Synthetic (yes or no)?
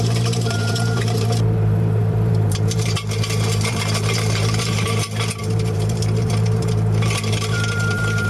yes